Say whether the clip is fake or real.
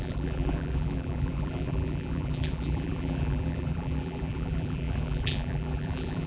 fake